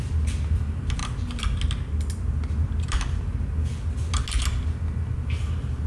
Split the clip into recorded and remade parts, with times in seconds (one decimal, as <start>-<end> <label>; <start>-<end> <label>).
0.0-5.9 recorded